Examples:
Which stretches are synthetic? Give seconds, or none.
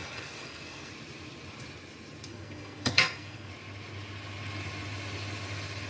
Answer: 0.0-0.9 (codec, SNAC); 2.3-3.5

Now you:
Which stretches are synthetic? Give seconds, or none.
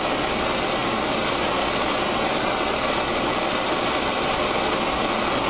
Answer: none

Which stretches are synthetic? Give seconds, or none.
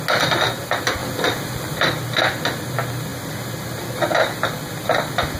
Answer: 1.0-1.8 (vocoder, BigVGAN v2)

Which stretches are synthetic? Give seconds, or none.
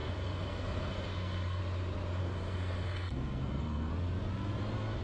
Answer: 0.0-1.6 (codec, SNAC); 2.2-3.9